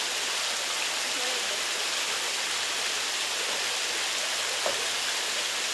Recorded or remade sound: recorded